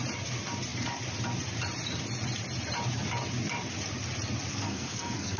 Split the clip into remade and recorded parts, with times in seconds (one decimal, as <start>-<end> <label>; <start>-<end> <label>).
0.0-4.5 recorded; 4.5-5.4 remade